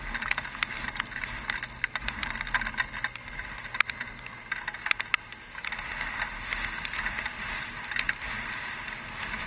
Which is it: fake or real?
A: real